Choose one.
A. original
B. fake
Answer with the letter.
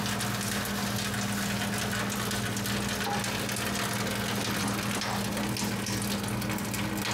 A